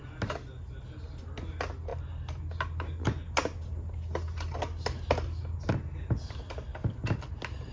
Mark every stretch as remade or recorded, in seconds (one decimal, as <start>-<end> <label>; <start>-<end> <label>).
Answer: 0.0-7.7 recorded